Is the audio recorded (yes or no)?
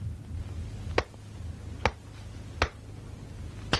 yes